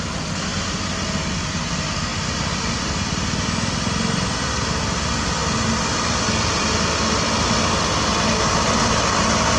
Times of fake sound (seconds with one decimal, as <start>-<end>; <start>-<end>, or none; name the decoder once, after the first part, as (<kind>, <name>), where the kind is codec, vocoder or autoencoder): none